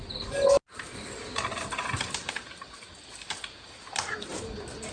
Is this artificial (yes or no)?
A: no